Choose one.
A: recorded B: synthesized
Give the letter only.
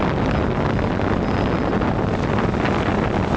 A